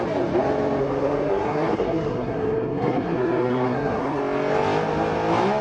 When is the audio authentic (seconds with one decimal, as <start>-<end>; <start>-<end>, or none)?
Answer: 0.0-0.8; 4.2-5.6